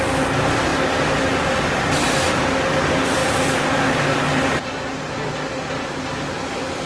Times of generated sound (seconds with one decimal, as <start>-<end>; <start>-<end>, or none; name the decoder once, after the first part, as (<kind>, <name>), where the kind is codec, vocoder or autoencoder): 3.2-6.9 (vocoder, BigVGAN v2)